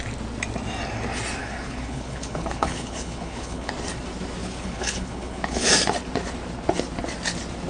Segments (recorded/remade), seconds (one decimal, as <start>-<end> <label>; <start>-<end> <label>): 0.0-1.4 recorded; 1.4-3.7 remade; 3.7-4.4 recorded; 4.4-5.7 remade; 5.7-7.7 recorded